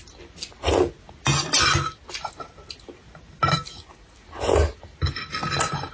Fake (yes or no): no